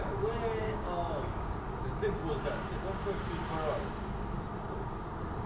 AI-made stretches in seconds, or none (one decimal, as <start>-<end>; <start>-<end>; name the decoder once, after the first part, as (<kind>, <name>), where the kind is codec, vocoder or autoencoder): 0.6-1.6 (codec, DAC)